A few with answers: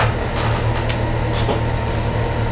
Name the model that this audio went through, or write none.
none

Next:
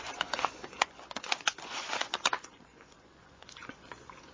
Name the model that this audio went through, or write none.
vocoder, Vocos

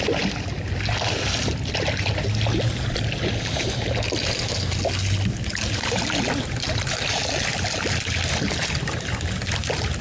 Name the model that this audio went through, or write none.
none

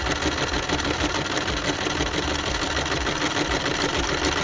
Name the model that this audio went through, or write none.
none